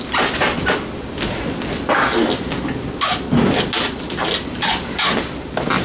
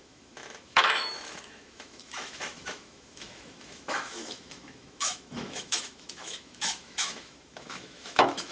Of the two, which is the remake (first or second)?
second